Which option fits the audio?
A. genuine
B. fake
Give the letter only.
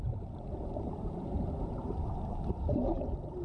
B